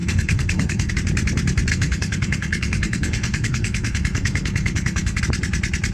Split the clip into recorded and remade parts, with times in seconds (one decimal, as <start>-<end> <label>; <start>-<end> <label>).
0.0-0.9 remade; 0.9-1.7 recorded; 1.7-5.2 remade; 5.2-5.9 recorded